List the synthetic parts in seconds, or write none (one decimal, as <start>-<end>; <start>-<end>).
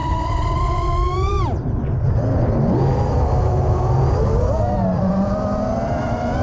none